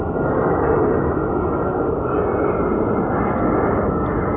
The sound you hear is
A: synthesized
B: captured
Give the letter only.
B